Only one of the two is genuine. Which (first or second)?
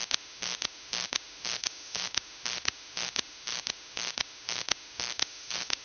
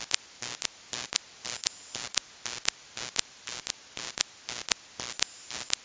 second